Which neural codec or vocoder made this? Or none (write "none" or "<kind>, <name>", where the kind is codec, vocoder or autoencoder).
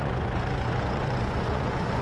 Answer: vocoder, Vocos